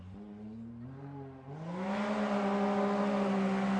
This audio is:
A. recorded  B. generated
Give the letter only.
A